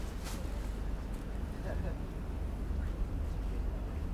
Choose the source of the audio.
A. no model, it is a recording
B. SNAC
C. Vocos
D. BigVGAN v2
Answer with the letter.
A